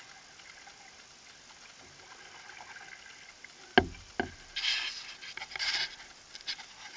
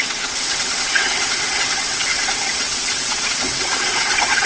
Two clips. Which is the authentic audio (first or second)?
first